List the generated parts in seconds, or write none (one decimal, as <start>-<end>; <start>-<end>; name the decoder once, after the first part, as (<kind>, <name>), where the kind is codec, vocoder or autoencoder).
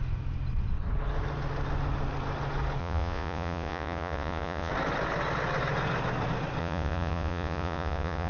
2.8-4.7 (vocoder, Vocos); 6.6-8.3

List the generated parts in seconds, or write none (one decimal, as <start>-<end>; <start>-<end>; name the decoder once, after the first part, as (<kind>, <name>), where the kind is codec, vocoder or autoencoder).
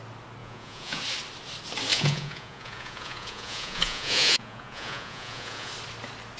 0.4-1.0 (vocoder, Vocos); 1.9-5.7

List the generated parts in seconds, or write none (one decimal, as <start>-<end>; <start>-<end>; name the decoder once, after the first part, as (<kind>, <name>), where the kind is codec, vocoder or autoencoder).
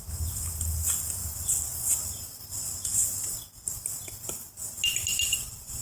none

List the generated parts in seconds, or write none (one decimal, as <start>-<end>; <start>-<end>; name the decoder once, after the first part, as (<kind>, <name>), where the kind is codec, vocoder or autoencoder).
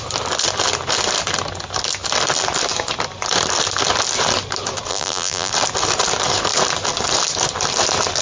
4.9-5.5 (vocoder, BigVGAN v2)